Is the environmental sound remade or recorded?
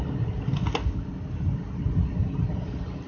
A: recorded